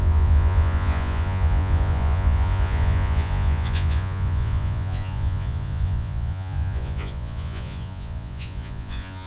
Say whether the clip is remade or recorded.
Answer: remade